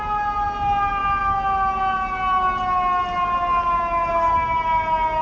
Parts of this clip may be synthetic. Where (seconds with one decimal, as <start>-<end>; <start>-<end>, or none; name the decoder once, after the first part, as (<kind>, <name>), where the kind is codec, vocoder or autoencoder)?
none